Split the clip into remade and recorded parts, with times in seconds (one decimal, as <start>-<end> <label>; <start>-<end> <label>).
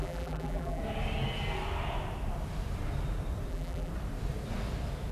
0.0-0.8 remade; 0.8-3.5 recorded; 3.5-3.9 remade; 3.9-5.1 recorded